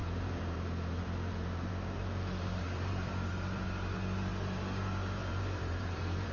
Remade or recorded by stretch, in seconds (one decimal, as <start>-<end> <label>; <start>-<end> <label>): 0.0-6.3 remade